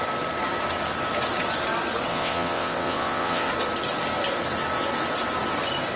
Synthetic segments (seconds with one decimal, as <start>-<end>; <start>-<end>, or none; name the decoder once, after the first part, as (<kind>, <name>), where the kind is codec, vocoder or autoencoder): 2.1-3.5 (vocoder, WaveNeXt)